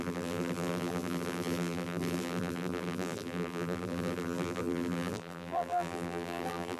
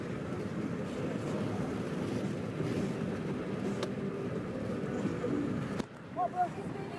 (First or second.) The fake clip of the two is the first